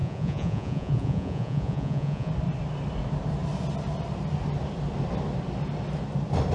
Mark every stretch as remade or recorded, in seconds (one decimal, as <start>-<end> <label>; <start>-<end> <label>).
0.0-2.3 remade; 2.3-6.5 recorded